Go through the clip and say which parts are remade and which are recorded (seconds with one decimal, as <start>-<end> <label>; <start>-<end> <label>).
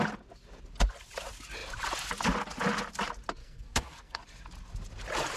0.0-3.4 recorded; 3.4-4.2 remade; 4.2-5.4 recorded